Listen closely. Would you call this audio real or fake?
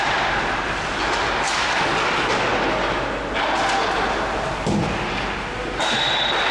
real